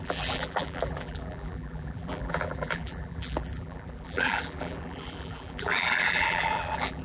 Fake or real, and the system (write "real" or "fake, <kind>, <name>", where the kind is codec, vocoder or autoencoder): fake, vocoder, BigVGAN v2